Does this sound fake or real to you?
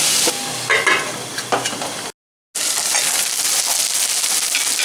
real